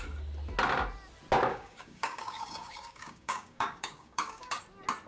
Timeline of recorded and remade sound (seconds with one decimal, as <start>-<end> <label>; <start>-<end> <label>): 0.0-1.5 recorded; 1.5-4.6 remade; 4.6-5.1 recorded